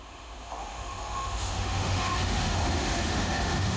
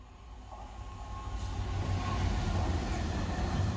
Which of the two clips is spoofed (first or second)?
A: first